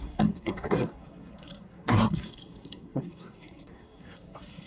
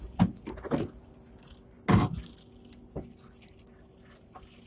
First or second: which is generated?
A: first